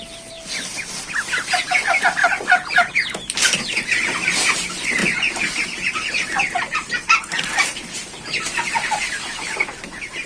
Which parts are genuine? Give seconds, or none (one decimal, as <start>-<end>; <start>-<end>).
0.0-5.0; 9.6-10.3